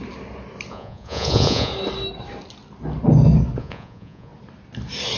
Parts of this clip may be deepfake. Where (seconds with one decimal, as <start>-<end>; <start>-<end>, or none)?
0.7-1.7; 3.6-4.3